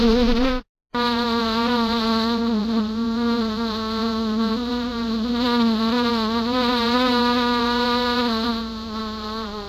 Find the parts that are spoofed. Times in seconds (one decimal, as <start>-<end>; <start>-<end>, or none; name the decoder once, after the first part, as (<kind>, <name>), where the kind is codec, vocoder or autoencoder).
none